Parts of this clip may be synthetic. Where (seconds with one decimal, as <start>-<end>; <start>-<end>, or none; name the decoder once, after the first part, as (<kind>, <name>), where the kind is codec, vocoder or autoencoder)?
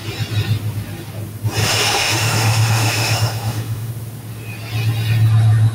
1.6-3.9 (autoencoder, DAC-VAE)